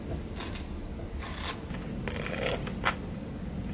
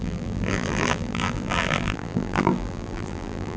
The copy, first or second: second